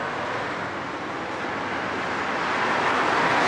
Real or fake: real